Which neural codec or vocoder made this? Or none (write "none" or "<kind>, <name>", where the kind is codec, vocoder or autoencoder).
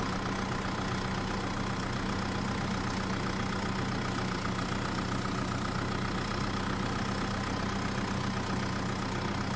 none